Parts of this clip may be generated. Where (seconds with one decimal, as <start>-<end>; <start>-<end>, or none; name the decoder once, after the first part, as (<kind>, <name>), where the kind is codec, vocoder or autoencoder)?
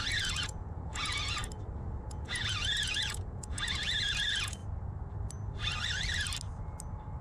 0.0-1.4 (vocoder, Vocos); 2.1-4.6